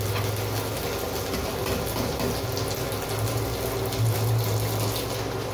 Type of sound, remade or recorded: recorded